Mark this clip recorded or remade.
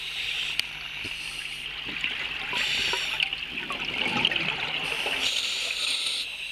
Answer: recorded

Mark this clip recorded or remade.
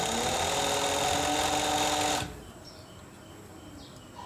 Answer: recorded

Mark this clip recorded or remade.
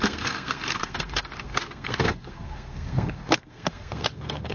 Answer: remade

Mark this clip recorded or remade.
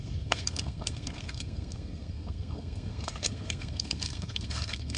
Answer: remade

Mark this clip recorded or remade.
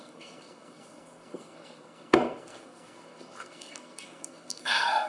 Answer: remade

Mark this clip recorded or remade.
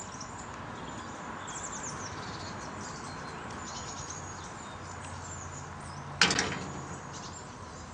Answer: recorded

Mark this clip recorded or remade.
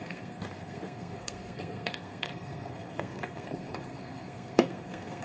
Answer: remade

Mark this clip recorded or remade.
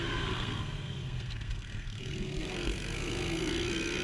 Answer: remade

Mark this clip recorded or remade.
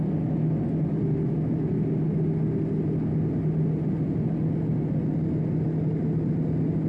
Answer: recorded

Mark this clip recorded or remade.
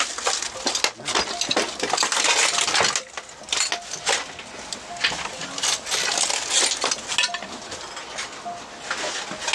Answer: recorded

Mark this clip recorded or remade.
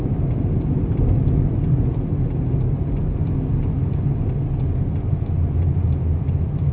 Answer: recorded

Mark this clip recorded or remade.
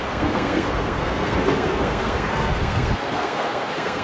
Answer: remade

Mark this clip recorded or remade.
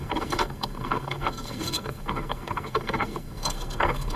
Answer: remade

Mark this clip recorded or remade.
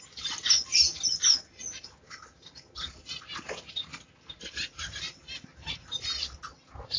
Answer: recorded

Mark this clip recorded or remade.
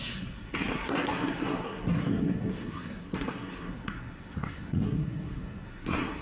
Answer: remade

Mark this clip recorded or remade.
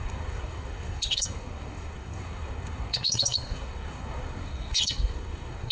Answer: remade